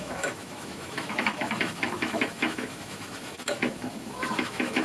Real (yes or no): no